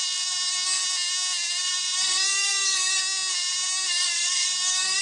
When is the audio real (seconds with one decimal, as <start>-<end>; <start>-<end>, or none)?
0.8-1.6; 3.0-3.9